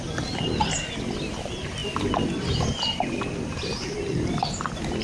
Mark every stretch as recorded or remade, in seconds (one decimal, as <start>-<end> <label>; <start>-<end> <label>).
0.0-5.0 recorded